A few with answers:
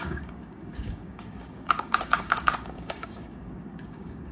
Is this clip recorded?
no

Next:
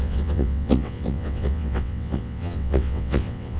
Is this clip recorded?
no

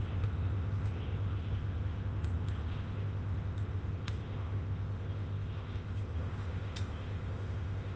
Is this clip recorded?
no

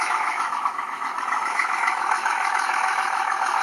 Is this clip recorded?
no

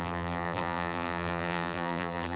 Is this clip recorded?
no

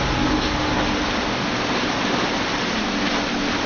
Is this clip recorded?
yes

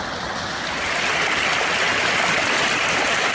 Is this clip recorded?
yes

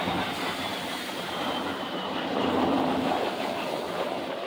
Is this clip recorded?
no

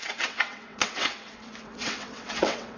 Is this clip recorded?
no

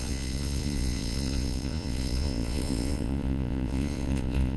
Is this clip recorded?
no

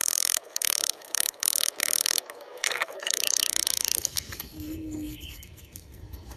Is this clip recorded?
no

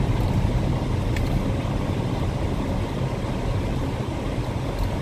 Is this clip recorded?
yes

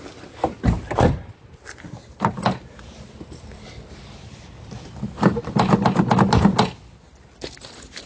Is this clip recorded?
yes